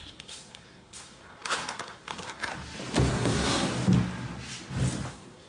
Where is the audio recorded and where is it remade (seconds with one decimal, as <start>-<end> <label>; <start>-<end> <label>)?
0.0-2.5 remade; 2.5-3.1 recorded; 3.1-3.7 remade; 3.7-5.1 recorded; 5.1-5.5 remade